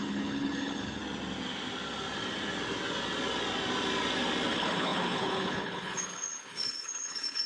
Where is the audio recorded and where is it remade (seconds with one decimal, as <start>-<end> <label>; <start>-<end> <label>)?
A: 0.0-1.0 remade; 1.0-4.5 recorded; 4.5-7.5 remade